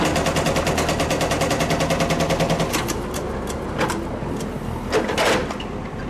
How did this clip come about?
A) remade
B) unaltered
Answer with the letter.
B